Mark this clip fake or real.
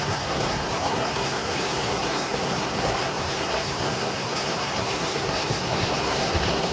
fake